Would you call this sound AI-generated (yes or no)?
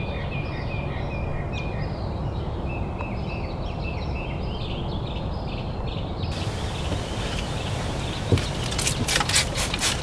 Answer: no